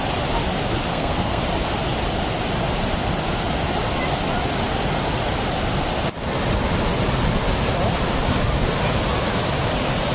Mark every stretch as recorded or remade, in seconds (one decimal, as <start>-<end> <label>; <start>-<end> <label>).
0.0-0.9 recorded; 0.9-1.4 remade; 1.4-10.1 recorded